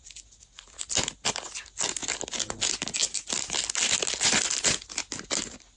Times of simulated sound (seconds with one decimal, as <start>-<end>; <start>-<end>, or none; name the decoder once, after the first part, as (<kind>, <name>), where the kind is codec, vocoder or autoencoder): none